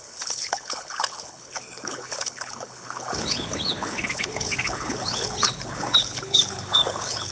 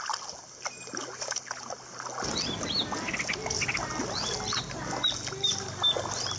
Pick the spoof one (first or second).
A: first